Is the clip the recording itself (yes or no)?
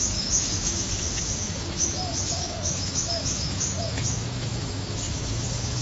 no